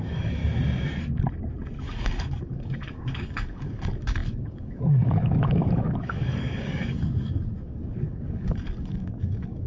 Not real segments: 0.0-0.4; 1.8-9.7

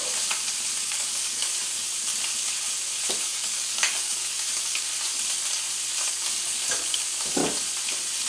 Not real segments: 0.8-2.1; 3.2-4.9; 6.1-7.4

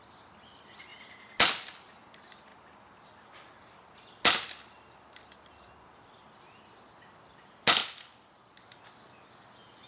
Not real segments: none

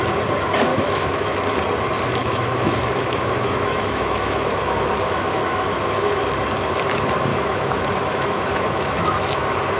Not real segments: 0.7-1.6; 2.2-6.3; 7.3-9.8

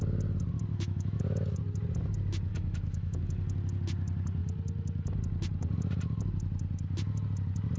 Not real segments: 0.7-1.2; 2.5-3.2

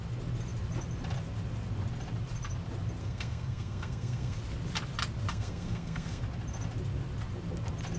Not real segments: 3.0-4.4; 5.3-6.2

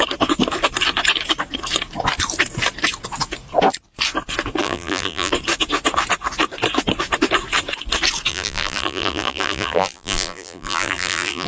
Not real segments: 4.6-5.3; 8.3-11.5